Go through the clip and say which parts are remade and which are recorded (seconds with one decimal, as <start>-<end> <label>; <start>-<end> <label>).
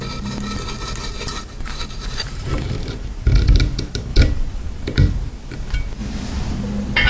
0.0-1.1 recorded; 1.1-3.6 remade; 3.6-4.1 recorded; 4.1-5.3 remade; 5.3-7.1 recorded